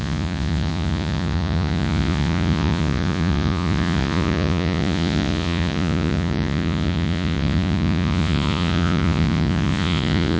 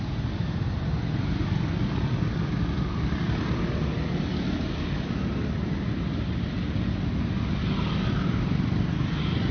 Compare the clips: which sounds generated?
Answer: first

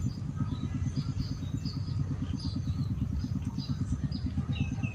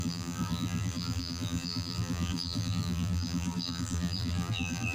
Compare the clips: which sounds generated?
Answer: second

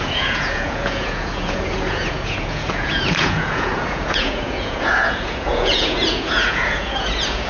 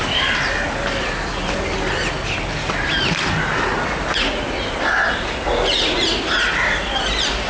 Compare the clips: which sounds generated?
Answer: first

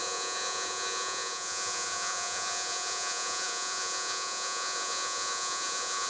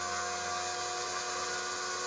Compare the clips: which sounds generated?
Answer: first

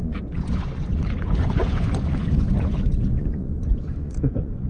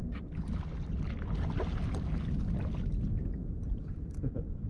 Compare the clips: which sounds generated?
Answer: first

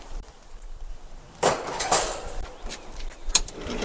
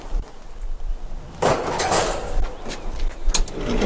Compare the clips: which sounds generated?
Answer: first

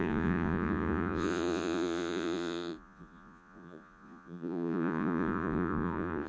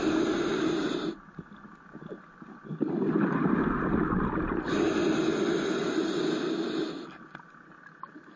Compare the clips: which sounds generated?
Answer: first